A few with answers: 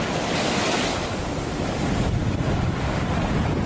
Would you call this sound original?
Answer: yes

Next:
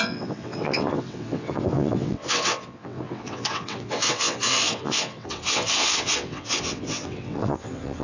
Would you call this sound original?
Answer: no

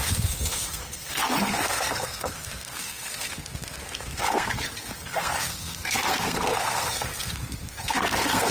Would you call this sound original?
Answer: no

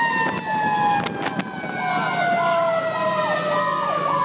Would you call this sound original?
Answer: yes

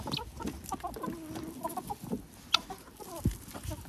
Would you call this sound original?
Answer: yes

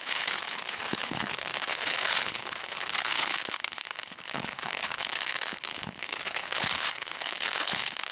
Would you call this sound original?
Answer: no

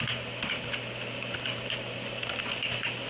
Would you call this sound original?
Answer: yes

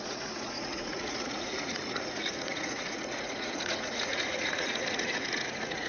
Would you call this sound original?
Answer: no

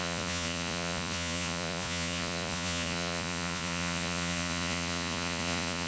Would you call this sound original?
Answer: no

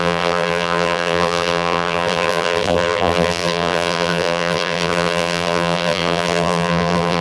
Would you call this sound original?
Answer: no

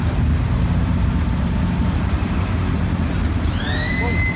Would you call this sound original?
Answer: yes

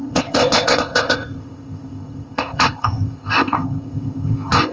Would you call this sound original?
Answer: no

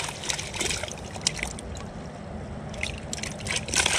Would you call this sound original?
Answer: yes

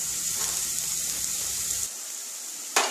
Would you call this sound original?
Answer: no